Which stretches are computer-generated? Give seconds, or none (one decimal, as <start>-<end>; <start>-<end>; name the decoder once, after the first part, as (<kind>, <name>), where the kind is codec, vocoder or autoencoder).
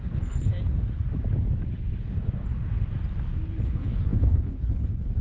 0.0-0.5 (codec, HILCodec); 3.6-5.2